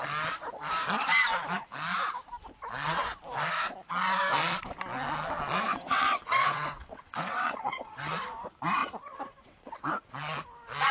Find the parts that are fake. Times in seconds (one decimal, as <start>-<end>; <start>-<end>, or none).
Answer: 5.7-8.2; 8.8-9.9